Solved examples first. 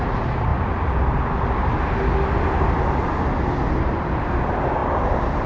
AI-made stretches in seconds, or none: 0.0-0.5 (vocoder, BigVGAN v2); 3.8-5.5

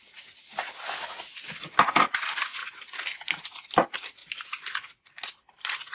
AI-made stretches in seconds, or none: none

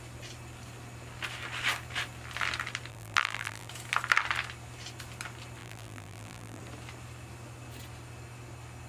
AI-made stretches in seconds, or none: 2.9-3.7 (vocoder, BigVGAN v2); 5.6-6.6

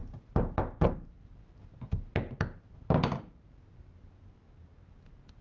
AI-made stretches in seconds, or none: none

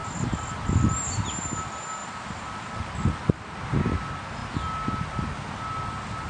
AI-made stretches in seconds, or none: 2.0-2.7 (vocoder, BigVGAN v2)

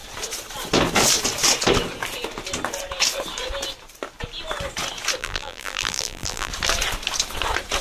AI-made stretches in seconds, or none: 5.2-6.5 (vocoder, BigVGAN v2)

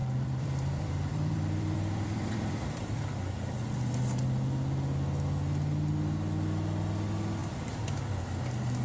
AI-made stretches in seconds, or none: 0.0-3.1 (vocoder, BigVGAN v2); 7.4-8.2